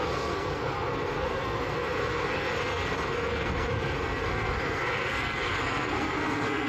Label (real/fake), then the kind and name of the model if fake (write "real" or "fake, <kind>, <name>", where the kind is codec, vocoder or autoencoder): fake, codec, SNAC